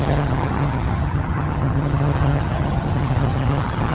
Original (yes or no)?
no